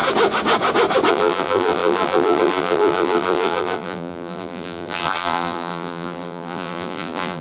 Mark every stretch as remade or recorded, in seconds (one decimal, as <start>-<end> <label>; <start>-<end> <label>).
0.0-1.1 recorded; 1.1-7.4 remade